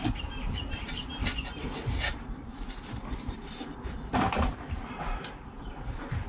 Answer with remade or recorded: remade